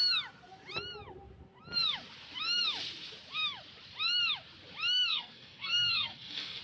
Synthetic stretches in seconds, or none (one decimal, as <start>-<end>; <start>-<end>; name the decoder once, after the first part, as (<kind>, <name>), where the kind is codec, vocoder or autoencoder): 5.1-6.6 (codec, SNAC)